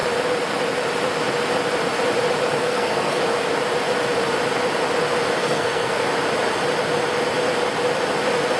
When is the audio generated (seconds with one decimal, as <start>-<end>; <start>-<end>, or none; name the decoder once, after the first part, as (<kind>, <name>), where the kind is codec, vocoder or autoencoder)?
2.6-3.2 (codec, SNAC); 5.4-6.0

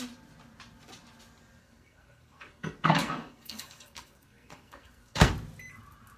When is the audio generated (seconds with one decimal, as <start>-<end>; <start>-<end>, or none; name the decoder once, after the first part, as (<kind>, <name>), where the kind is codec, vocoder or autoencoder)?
1.6-5.3 (codec, SNAC)

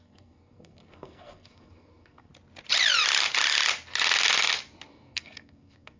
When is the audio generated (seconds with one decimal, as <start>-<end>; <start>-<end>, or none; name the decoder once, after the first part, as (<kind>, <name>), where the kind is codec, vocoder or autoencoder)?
0.0-2.3 (codec, SNAC); 4.9-6.0

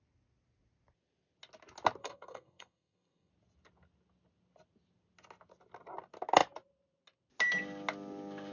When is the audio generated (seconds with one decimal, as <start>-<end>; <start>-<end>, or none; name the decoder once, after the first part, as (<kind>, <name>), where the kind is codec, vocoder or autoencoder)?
2.0-3.3 (codec, SNAC)